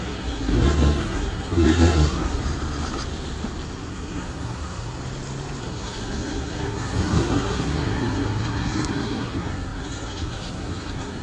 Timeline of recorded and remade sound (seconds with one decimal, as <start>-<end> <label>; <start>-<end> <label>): 0.0-2.4 remade; 2.4-3.9 recorded; 3.9-5.0 remade; 5.0-5.6 recorded; 5.6-11.2 remade